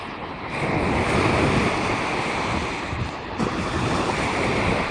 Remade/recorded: recorded